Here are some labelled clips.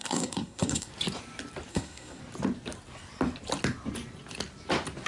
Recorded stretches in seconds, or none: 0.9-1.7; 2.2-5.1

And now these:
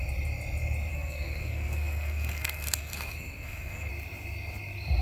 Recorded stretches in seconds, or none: 0.0-0.9; 3.9-5.0